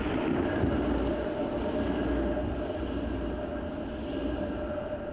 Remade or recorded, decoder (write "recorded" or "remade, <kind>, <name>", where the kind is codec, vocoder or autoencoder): recorded